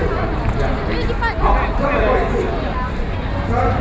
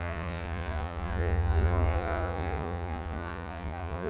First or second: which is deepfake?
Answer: second